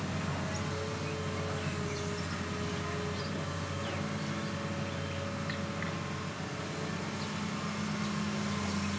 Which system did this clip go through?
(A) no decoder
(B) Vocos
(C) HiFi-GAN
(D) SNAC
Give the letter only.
A